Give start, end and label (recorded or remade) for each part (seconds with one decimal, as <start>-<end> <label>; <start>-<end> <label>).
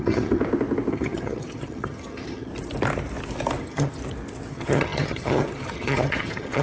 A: 0.0-0.4 remade; 0.4-0.9 recorded; 0.9-2.5 remade; 2.5-3.6 recorded; 3.6-4.0 remade; 4.0-4.5 recorded; 4.5-6.6 remade